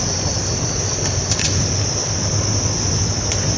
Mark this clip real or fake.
real